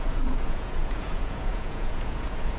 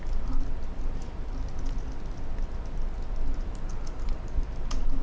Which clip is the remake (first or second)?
first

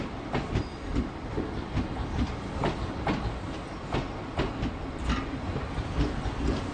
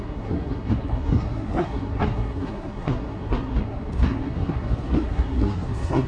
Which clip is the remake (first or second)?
second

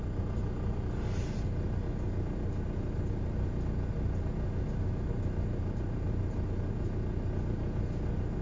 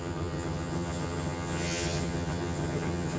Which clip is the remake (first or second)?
second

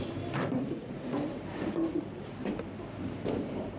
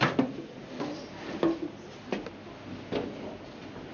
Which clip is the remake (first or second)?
first